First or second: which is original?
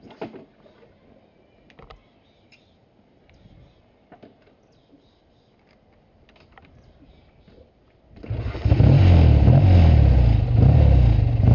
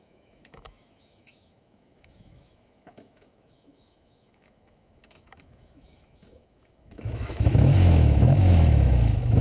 first